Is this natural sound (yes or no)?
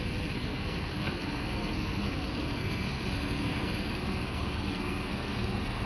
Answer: no